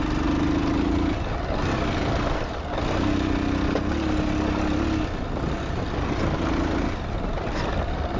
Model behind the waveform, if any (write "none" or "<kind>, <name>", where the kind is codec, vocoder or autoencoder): none